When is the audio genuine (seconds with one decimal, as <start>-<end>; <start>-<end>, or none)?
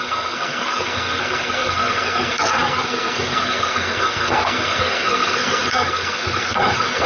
none